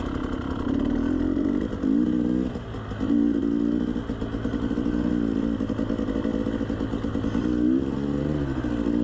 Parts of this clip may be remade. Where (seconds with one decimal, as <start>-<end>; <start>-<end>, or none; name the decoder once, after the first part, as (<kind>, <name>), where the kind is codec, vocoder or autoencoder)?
none